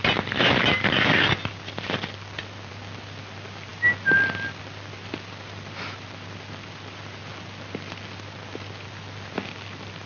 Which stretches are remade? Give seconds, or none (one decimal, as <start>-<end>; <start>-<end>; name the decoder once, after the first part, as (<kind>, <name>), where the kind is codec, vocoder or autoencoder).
none